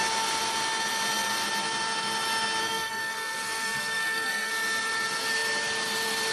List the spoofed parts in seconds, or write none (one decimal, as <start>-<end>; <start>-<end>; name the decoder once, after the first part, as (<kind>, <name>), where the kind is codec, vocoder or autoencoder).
2.6-4.5 (codec, SNAC)